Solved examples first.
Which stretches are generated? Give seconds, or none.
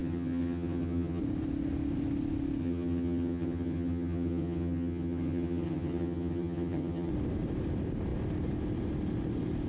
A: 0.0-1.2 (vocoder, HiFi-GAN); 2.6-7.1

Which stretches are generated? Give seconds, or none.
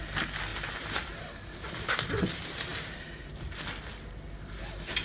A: 0.5-1.2 (vocoder, BigVGAN v2); 2.7-3.6